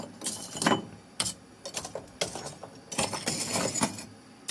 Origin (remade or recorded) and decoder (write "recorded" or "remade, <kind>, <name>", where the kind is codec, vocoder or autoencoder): recorded